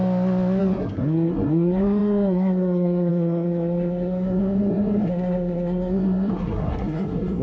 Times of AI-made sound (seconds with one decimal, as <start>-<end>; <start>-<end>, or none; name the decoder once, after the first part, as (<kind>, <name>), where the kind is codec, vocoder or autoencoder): 0.6-7.4 (codec, SNAC)